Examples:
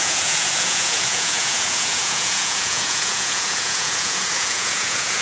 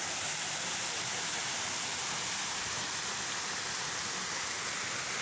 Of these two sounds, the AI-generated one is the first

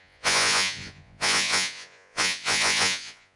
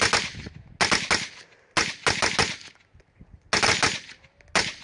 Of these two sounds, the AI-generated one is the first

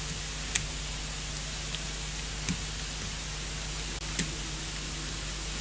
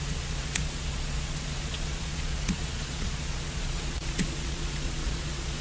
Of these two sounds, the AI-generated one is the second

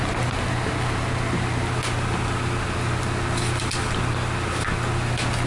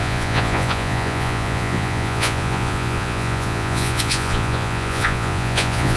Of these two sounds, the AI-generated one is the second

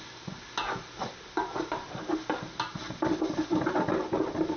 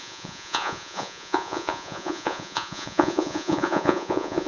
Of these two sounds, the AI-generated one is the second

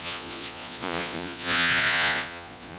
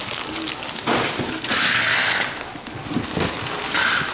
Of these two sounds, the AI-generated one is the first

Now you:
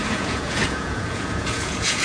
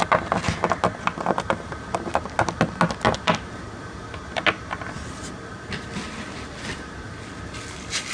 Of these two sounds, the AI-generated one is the first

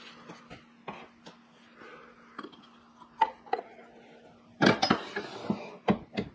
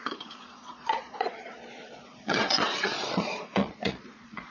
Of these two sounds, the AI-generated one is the second